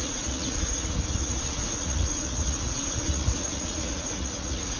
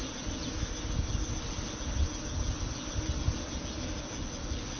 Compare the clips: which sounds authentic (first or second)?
second